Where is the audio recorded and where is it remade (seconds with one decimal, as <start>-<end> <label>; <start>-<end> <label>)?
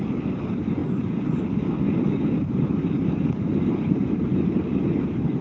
0.0-2.4 recorded; 2.4-4.5 remade; 4.5-5.4 recorded